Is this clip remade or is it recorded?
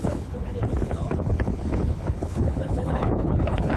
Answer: remade